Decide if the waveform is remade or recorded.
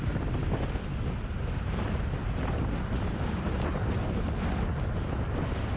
recorded